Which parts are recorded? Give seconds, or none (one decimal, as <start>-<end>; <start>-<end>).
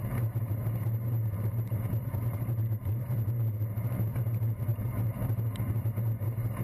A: none